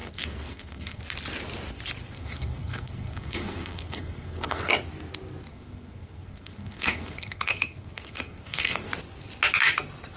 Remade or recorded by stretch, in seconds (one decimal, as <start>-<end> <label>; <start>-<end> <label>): 0.0-1.0 remade; 1.0-2.1 recorded; 2.1-4.7 remade; 4.7-5.5 recorded; 5.5-8.9 remade; 8.9-10.2 recorded